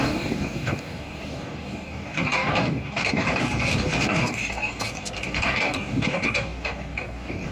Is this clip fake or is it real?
fake